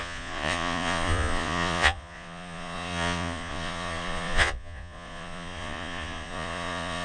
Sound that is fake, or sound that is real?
fake